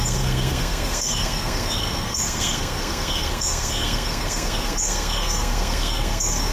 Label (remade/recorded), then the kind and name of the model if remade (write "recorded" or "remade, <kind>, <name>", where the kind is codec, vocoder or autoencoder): remade, codec, SNAC